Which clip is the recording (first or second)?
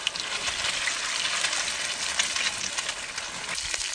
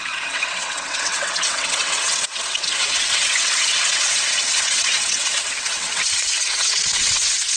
first